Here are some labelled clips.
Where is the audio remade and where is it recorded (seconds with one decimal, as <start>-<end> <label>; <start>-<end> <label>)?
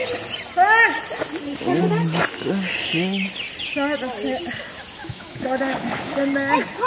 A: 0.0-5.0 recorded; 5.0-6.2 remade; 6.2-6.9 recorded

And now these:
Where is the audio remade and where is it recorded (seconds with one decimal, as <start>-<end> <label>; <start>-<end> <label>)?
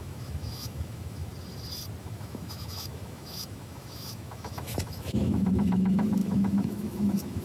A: 0.0-1.3 remade; 1.3-2.0 recorded; 2.0-7.4 remade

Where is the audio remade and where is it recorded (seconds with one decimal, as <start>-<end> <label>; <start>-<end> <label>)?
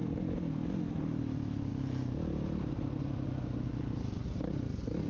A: 0.0-1.2 recorded; 1.2-1.7 remade; 1.7-5.1 recorded